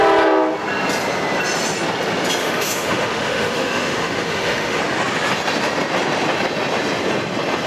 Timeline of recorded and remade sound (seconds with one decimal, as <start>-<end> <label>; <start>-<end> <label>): 0.0-2.4 recorded; 2.4-4.8 remade; 4.8-7.7 recorded